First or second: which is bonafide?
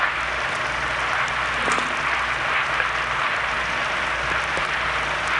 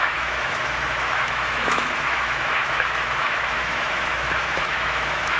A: first